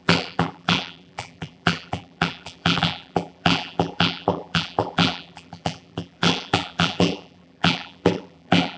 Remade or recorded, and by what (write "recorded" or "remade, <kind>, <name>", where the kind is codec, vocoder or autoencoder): remade, vocoder, BigVGAN v2